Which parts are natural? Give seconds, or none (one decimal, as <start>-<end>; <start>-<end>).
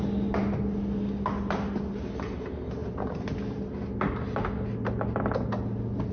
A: 0.0-6.1